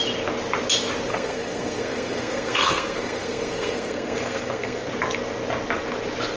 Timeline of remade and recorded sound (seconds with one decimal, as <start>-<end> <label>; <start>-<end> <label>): 0.0-1.1 recorded; 1.1-4.9 remade; 4.9-6.4 recorded